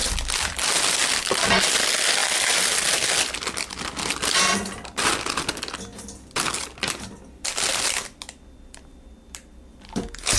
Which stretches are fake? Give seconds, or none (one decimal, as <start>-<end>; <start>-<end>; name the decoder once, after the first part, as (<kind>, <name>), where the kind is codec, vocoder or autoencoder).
none